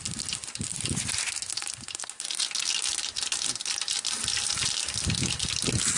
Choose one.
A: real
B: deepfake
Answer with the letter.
A